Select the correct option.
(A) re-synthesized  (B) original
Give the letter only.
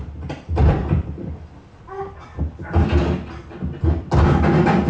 B